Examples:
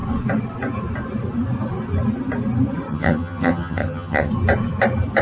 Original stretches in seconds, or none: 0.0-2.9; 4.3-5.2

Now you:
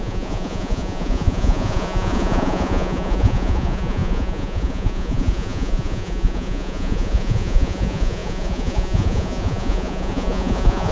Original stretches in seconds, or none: none

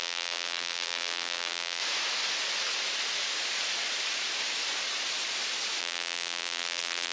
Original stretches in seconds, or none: 1.8-5.8

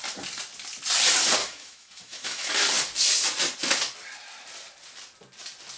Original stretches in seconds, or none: 0.0-1.4; 2.5-5.8

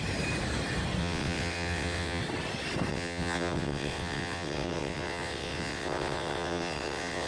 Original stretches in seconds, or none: 0.0-1.0; 2.2-2.9

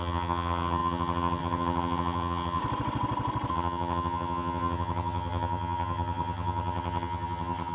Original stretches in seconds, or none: 2.6-3.5

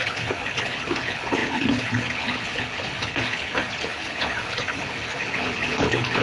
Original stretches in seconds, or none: none